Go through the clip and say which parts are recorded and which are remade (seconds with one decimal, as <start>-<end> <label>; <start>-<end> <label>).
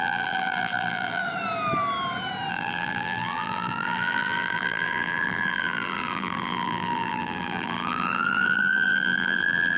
0.0-1.2 remade; 1.2-2.5 recorded; 2.5-9.8 remade